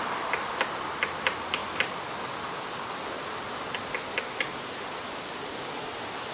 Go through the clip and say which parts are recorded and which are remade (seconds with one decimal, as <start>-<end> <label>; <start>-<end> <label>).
0.0-6.3 recorded